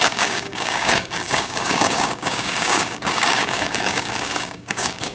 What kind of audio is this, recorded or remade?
remade